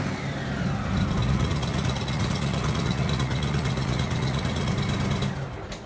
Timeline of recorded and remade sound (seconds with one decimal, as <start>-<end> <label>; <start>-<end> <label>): 0.0-1.2 recorded; 1.2-4.7 remade; 4.7-5.9 recorded